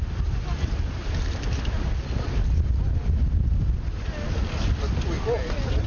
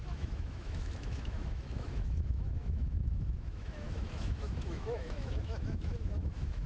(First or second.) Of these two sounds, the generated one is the second